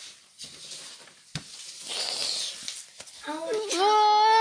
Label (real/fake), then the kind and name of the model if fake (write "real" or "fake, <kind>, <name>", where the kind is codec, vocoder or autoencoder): real